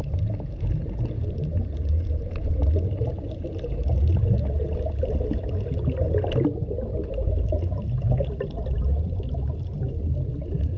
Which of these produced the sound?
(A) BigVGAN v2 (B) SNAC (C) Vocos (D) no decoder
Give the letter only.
D